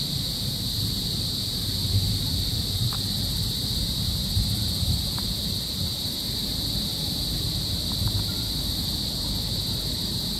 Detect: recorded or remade remade